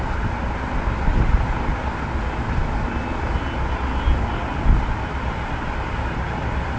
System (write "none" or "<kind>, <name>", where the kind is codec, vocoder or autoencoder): none